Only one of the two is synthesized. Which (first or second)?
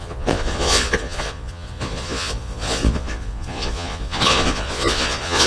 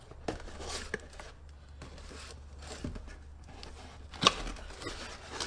first